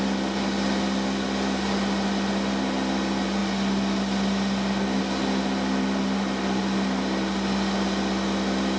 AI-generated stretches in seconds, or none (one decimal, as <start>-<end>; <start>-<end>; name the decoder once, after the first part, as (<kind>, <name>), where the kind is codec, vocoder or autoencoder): none